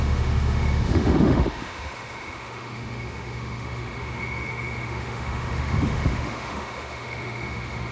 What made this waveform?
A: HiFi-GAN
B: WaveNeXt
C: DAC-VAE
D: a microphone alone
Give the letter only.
C